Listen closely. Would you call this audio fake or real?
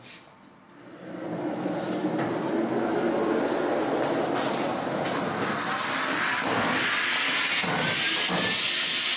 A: real